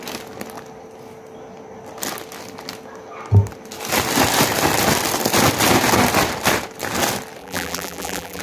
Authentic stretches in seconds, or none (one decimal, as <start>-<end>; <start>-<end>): 0.0-7.4